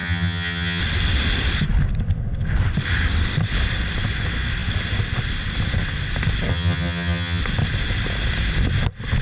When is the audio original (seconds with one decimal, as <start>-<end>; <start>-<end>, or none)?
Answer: 0.8-6.5; 7.4-9.2